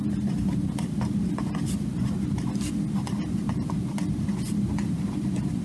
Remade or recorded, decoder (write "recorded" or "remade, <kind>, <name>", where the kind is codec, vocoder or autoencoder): recorded